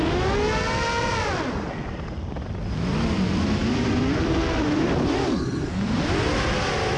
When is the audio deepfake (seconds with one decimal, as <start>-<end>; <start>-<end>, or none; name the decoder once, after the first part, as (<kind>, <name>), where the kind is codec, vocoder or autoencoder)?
3.6-6.3 (vocoder, BigVGAN v2)